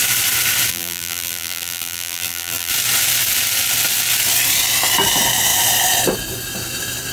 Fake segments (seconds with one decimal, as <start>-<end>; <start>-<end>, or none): 0.7-2.7